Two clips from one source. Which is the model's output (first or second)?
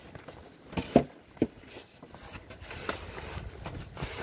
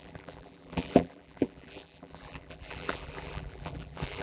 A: second